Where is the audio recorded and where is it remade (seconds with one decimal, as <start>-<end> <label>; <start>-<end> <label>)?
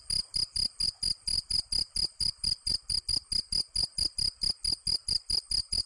0.0-1.3 recorded; 1.3-3.0 remade; 3.0-5.0 recorded; 5.0-5.9 remade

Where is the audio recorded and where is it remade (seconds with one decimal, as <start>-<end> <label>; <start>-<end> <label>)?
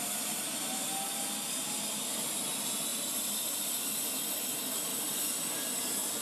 0.0-6.2 recorded